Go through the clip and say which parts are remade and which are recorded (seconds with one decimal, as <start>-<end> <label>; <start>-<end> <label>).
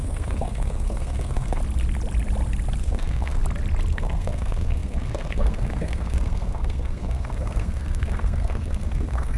0.0-1.6 remade; 1.6-2.8 recorded; 2.8-3.4 remade; 3.4-3.9 recorded; 3.9-9.4 remade